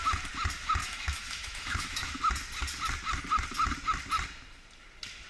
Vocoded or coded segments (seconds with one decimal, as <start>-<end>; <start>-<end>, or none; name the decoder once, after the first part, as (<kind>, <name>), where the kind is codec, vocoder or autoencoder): 0.8-2.2 (autoencoder, DAC-VAE)